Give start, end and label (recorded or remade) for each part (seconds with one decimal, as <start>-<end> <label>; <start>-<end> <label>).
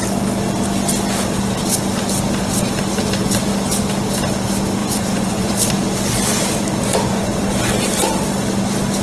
0.0-4.8 recorded; 4.8-5.5 remade; 5.5-6.9 recorded; 6.9-7.4 remade; 7.4-9.0 recorded